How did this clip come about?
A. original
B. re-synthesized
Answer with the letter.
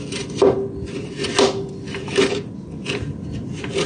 A